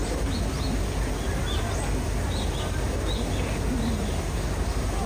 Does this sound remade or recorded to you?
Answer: recorded